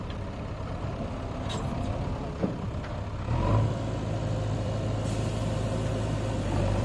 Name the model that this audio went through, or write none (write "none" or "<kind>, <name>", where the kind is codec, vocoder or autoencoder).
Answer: vocoder, BigVGAN v2